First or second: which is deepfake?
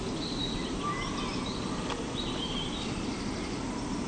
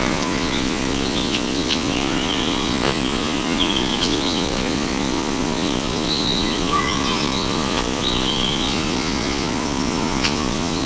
second